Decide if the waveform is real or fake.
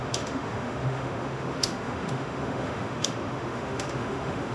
fake